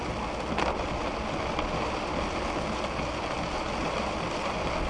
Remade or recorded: recorded